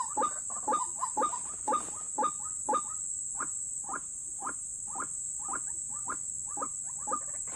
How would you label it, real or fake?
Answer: real